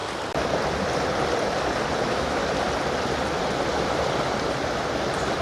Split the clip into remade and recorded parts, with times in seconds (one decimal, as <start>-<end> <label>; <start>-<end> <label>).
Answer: 0.0-2.0 recorded; 2.0-2.4 remade; 2.4-5.4 recorded

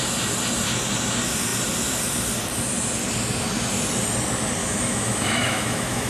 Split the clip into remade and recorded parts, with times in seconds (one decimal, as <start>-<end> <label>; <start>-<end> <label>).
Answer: 0.0-4.6 recorded; 4.6-6.1 remade